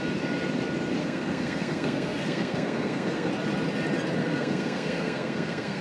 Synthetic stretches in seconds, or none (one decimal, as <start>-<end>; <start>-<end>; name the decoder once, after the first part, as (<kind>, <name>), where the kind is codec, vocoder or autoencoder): 1.0-3.3 (codec, SNAC); 4.2-5.8